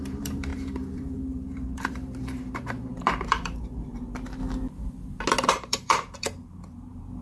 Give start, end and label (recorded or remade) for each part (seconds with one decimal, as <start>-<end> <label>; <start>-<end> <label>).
0.0-4.4 remade; 4.4-5.5 recorded; 5.5-7.2 remade